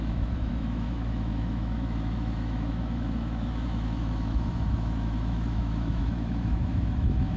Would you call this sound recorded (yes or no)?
no